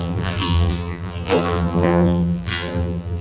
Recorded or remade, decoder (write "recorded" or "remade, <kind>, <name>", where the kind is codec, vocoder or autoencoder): remade, vocoder, BigVGAN v2